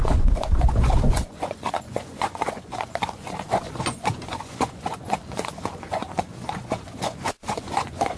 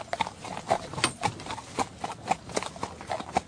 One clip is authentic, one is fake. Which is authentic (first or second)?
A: second